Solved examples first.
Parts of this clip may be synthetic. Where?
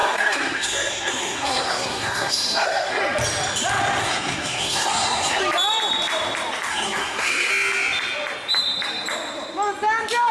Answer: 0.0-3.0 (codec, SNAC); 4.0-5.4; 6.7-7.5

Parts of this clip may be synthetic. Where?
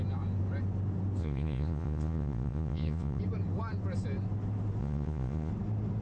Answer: 1.2-3.2 (vocoder, Vocos); 4.8-5.5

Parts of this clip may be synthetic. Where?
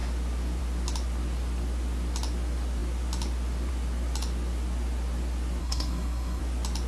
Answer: 5.6-6.4 (codec, SNAC)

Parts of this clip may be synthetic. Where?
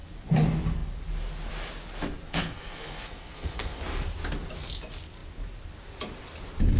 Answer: 2.3-3.8 (codec, SNAC)